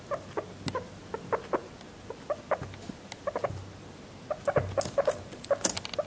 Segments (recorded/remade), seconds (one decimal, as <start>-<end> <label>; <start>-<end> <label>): 0.0-6.1 recorded